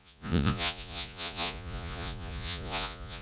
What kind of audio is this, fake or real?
fake